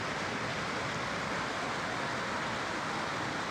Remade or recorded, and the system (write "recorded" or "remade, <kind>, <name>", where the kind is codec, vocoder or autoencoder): recorded